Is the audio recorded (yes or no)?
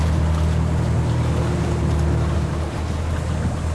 yes